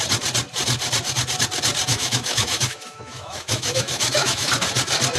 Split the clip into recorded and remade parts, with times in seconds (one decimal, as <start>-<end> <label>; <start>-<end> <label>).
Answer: 0.0-1.9 recorded; 1.9-4.5 remade; 4.5-5.2 recorded